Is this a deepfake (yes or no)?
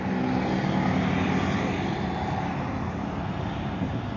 no